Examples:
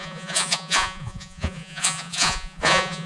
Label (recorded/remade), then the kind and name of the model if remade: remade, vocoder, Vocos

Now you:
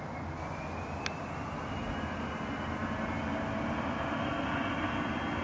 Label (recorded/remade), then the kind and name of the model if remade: recorded